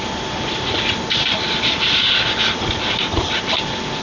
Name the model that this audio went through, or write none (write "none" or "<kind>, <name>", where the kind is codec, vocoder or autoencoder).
none